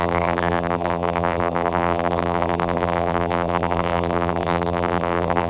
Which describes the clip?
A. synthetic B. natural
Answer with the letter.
A